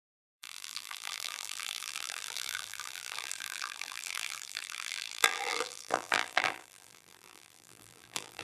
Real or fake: fake